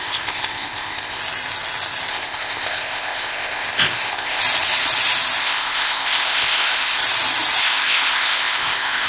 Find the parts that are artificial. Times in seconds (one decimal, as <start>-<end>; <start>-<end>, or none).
0.0-1.2; 2.1-4.4; 5.4-7.0; 7.6-9.1